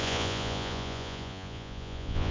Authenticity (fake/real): fake